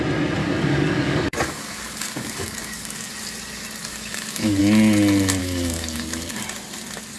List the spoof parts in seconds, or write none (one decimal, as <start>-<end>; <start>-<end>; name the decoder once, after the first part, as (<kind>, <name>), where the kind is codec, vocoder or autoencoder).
0.4-3.1 (codec, DAC); 3.8-4.6; 5.4-6.4